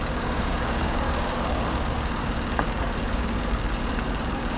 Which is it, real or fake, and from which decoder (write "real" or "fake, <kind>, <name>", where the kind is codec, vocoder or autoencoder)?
fake, codec, DAC